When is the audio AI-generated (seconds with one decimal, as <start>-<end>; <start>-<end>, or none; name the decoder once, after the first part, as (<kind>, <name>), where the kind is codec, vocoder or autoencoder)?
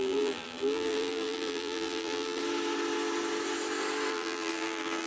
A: 0.0-2.4 (vocoder, BigVGAN v2); 4.1-5.1